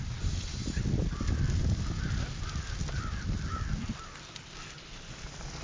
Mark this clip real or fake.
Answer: real